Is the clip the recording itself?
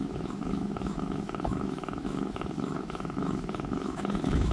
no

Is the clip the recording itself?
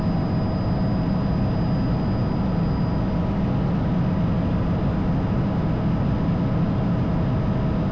yes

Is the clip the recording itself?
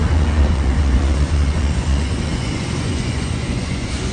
no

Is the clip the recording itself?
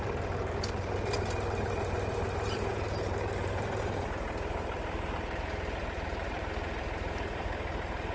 no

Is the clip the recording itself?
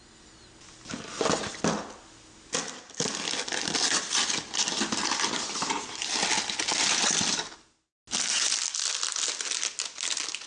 yes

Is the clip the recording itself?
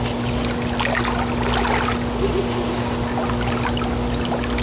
yes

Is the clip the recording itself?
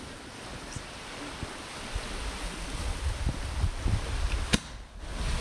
yes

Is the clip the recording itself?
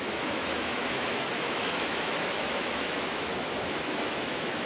no